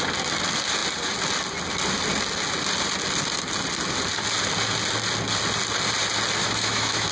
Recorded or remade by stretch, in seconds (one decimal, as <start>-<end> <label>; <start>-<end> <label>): 0.0-6.4 recorded; 6.4-7.1 remade